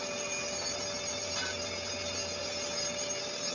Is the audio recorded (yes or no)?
yes